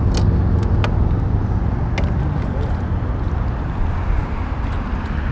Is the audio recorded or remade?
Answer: recorded